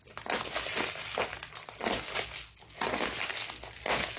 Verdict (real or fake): real